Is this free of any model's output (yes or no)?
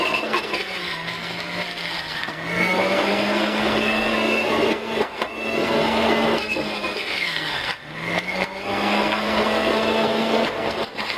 no